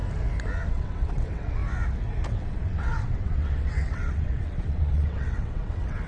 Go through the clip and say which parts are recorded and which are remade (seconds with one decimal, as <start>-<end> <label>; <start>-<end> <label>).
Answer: 0.0-0.7 recorded; 0.7-1.6 remade; 1.6-2.3 recorded; 2.3-6.1 remade